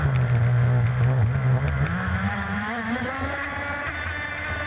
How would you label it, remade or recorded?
recorded